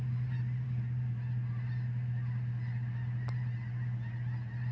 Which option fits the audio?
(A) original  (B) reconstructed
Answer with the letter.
A